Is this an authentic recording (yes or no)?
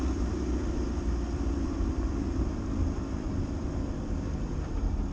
no